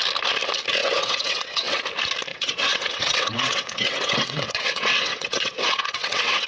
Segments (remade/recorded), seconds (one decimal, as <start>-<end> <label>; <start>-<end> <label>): 0.0-0.8 recorded; 0.8-1.8 remade; 1.8-2.3 recorded; 2.3-6.5 remade